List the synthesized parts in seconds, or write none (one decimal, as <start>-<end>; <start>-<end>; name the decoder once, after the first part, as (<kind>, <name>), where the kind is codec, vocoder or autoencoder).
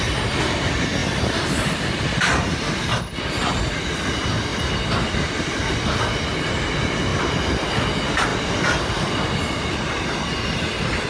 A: 4.5-6.0 (vocoder, BigVGAN v2); 8.3-9.1